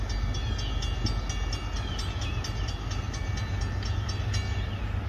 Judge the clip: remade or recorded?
recorded